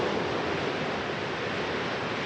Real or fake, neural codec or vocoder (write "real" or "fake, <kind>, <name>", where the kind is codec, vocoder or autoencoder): real